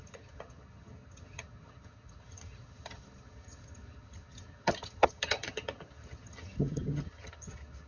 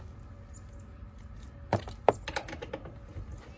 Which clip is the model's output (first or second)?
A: first